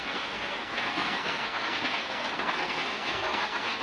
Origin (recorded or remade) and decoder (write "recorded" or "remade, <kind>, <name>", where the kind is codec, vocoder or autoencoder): remade, codec, SNAC